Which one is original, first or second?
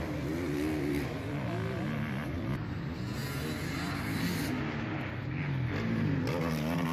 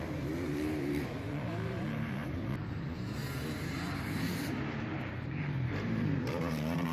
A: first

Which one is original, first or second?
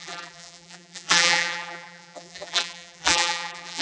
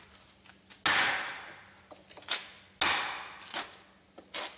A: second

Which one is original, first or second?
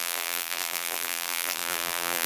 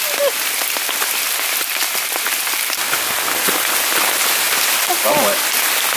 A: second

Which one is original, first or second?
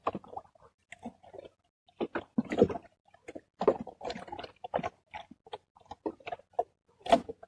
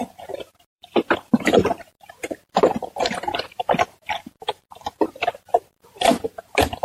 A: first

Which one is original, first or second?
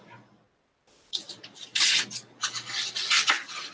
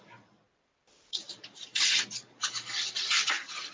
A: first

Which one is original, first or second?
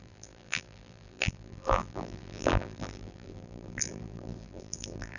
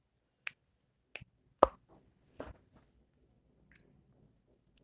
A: second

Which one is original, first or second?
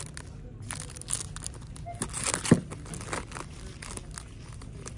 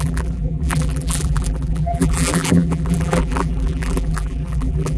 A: first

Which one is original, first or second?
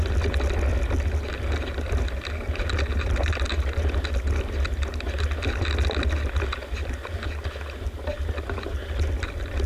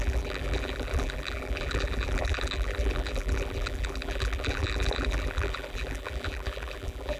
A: first